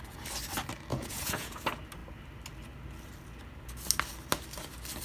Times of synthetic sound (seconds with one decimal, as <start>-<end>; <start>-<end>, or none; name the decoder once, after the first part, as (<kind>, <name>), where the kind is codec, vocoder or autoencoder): 0.9-1.5 (vocoder, Vocos)